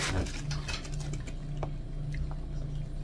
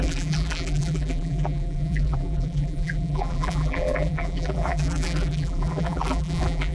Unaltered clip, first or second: first